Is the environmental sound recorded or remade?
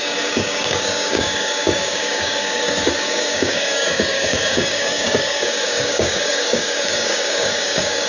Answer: remade